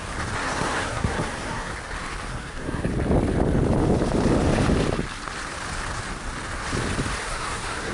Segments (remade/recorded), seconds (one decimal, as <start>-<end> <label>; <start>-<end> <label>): 0.0-0.4 recorded; 0.4-1.7 remade; 1.7-2.3 recorded; 2.3-2.9 remade; 2.9-7.2 recorded; 7.2-7.9 remade